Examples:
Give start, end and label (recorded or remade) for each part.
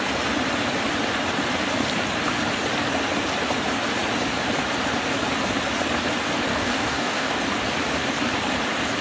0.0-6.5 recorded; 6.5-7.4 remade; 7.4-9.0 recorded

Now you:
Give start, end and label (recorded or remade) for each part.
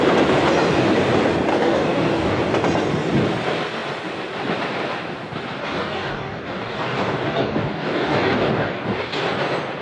0.0-1.5 recorded; 1.5-2.4 remade; 2.4-5.6 recorded; 5.6-9.2 remade; 9.2-9.8 recorded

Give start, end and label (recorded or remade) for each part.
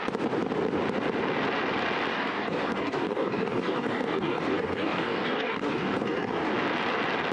0.0-2.1 recorded; 2.1-6.5 remade; 6.5-7.3 recorded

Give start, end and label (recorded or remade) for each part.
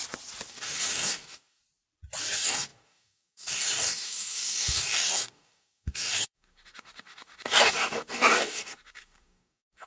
0.0-0.5 recorded; 0.5-1.6 remade; 1.6-2.2 recorded; 2.2-9.9 remade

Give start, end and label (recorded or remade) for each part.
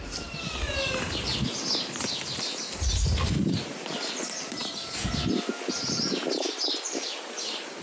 0.0-7.8 recorded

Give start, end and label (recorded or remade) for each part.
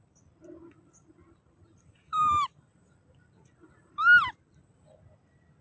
0.0-5.6 recorded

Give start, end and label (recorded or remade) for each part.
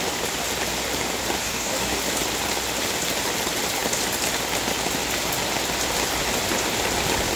0.0-1.4 recorded; 1.4-2.0 remade; 2.0-7.4 recorded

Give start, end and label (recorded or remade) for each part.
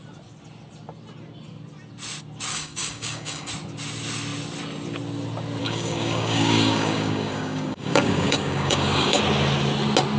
0.0-2.5 recorded; 2.5-3.5 remade; 3.5-5.6 recorded; 5.6-9.2 remade; 9.2-10.2 recorded